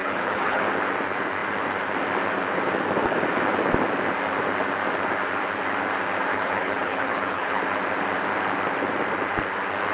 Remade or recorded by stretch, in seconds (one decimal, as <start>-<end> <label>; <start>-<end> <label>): 0.0-0.6 remade; 0.6-6.3 recorded; 6.3-7.6 remade; 7.6-9.9 recorded